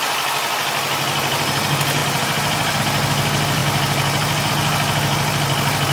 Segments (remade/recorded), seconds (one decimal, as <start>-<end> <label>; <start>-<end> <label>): 0.0-5.9 recorded